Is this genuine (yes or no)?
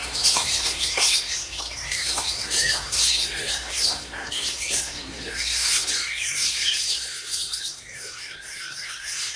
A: no